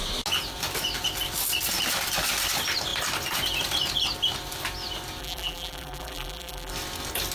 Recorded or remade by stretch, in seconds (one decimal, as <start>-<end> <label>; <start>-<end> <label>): 0.0-5.2 recorded; 5.2-6.7 remade; 6.7-7.3 recorded